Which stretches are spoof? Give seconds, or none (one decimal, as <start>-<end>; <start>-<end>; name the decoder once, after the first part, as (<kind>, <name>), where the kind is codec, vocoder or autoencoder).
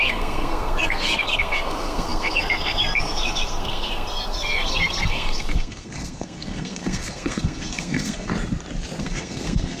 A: 0.0-8.3 (codec, SNAC); 9.0-9.8